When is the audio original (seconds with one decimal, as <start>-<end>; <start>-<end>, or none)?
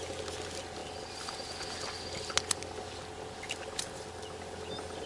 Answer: 0.0-5.1